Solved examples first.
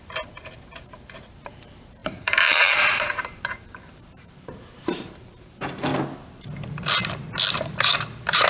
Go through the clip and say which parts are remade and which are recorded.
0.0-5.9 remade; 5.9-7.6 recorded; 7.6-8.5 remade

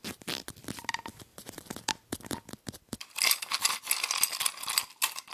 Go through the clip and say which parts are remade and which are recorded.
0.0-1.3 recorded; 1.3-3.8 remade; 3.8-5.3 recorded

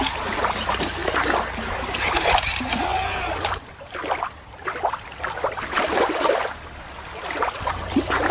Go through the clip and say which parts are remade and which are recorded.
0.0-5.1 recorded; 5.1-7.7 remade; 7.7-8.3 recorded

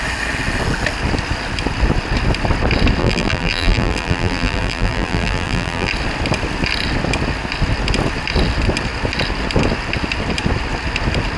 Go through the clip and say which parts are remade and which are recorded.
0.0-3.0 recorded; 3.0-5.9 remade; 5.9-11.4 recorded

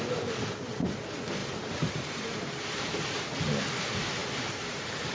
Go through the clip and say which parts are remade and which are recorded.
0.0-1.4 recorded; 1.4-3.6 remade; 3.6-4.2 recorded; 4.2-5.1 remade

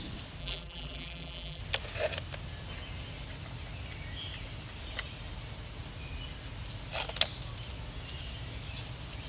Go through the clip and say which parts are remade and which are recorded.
0.0-0.4 recorded; 0.4-1.6 remade; 1.6-9.3 recorded

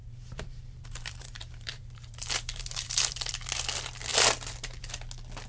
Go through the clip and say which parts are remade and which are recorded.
0.0-3.3 remade; 3.3-5.5 recorded